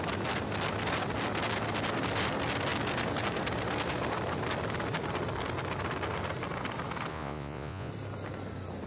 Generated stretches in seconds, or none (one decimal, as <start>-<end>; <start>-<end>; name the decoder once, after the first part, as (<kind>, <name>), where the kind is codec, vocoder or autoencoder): 7.1-7.9 (vocoder, Vocos)